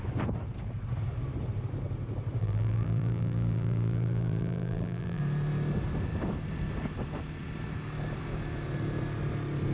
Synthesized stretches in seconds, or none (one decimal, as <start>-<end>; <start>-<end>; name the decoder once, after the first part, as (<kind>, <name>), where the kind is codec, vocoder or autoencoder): 2.4-5.2 (vocoder, BigVGAN v2)